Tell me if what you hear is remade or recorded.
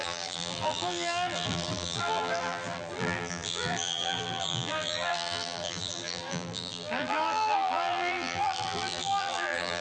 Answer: remade